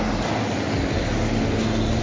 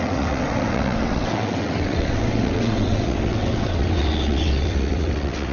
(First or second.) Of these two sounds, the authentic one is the first